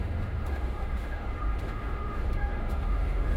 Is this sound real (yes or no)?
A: no